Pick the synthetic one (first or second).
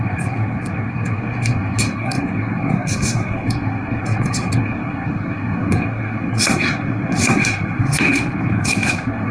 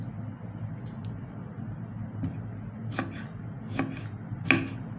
first